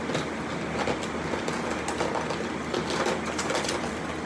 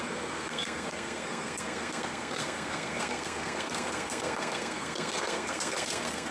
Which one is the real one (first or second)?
first